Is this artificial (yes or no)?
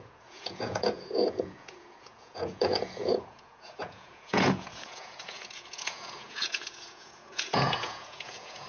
yes